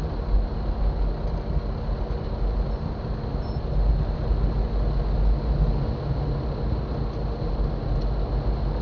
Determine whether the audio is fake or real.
real